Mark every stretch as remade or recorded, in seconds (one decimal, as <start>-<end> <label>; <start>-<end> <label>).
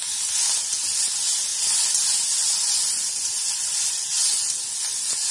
0.0-5.3 recorded